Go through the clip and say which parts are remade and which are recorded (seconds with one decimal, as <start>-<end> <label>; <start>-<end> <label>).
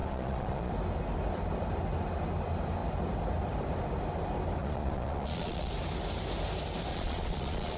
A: 0.0-0.7 remade; 0.7-4.6 recorded; 4.6-5.7 remade; 5.7-6.9 recorded; 6.9-7.8 remade